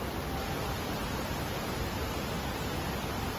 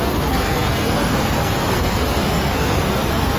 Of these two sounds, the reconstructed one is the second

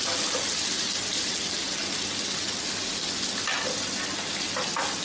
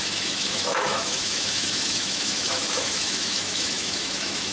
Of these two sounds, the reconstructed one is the second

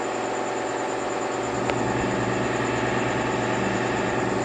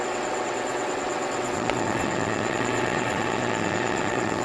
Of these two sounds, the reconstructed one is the second